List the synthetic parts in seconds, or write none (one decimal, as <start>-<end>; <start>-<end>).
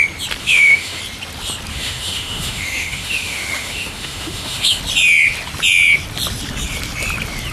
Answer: 0.4-1.0; 1.7-4.8